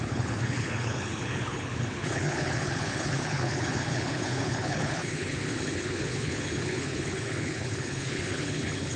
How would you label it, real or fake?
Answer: fake